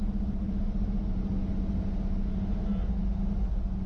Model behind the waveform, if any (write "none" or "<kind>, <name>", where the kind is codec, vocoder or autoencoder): none